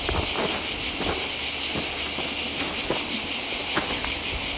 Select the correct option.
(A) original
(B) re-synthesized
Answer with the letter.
A